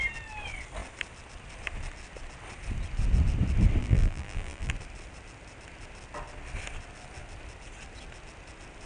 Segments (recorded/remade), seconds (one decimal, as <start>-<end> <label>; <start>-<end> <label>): 0.0-3.8 recorded; 3.8-4.7 remade; 4.7-8.9 recorded